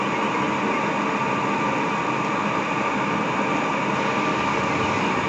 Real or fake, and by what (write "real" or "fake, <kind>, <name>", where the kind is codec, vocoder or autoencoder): real